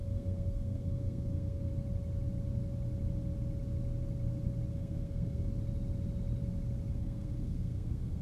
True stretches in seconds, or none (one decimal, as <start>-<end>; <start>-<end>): 1.7-4.7; 5.5-6.9